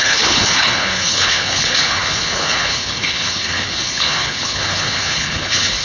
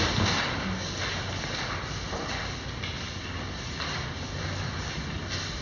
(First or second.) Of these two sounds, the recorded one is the second